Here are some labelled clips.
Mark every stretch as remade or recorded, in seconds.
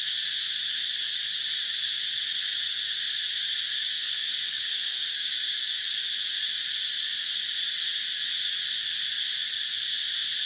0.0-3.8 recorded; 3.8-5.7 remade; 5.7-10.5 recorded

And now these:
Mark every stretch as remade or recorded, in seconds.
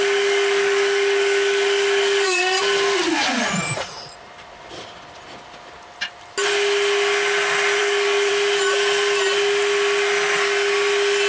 0.0-2.4 remade; 2.4-7.8 recorded; 7.8-8.3 remade; 8.3-11.3 recorded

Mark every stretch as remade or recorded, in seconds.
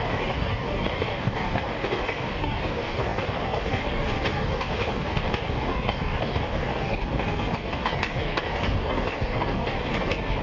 0.0-10.4 remade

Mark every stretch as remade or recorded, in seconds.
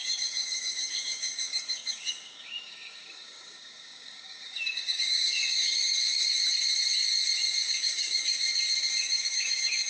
0.0-6.3 remade; 6.3-7.7 recorded; 7.7-8.3 remade; 8.3-9.0 recorded; 9.0-9.9 remade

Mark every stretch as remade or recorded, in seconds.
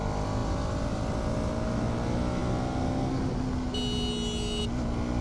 0.0-5.2 recorded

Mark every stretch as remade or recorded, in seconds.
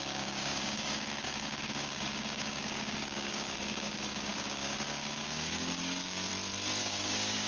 0.0-6.3 remade; 6.3-6.8 recorded; 6.8-7.5 remade